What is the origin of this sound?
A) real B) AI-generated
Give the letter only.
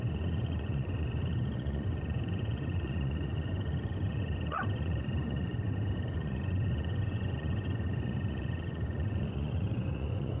B